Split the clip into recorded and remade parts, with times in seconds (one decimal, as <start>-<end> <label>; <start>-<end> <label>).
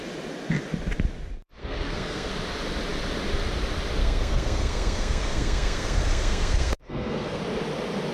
0.0-1.6 recorded; 1.6-2.3 remade; 2.3-4.0 recorded; 4.0-7.4 remade; 7.4-8.1 recorded